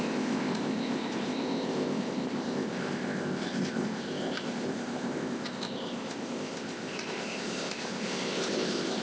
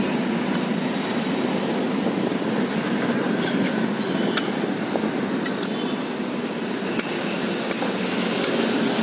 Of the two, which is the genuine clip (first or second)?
second